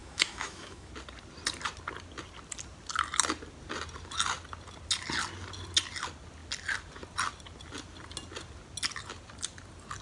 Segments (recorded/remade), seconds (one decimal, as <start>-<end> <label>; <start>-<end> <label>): 0.0-0.9 remade; 0.9-10.0 recorded

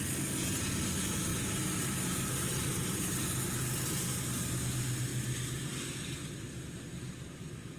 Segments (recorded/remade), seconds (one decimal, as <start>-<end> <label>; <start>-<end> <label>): 0.0-7.8 recorded

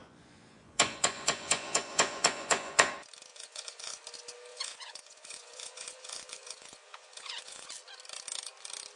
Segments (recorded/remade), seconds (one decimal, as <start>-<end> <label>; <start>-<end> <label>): 0.0-2.9 remade; 2.9-3.3 recorded; 3.3-4.0 remade; 4.0-4.5 recorded; 4.5-7.7 remade; 7.7-9.0 recorded

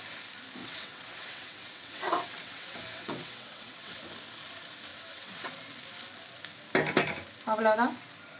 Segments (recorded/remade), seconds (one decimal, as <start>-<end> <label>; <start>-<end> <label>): 0.0-0.6 recorded; 0.6-4.0 remade; 4.0-4.9 recorded; 4.9-5.5 remade; 5.5-8.4 recorded

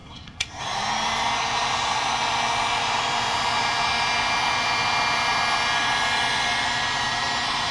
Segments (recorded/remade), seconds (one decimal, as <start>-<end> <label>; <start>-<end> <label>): 0.0-0.6 remade; 0.6-7.7 recorded

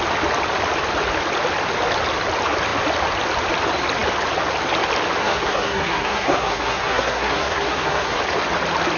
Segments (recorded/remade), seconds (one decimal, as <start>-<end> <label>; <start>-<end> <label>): 0.0-5.2 recorded; 5.2-8.2 remade; 8.2-9.0 recorded

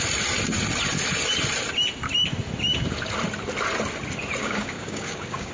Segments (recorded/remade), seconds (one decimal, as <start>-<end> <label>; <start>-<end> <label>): 0.0-4.4 recorded; 4.4-5.5 remade